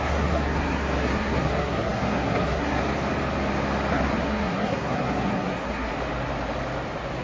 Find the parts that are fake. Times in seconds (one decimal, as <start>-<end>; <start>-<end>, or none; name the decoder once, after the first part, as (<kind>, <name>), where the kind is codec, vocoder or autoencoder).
0.0-2.8 (codec, SNAC); 3.9-5.9